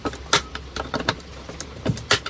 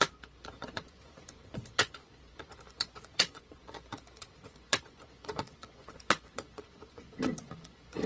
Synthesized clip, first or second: second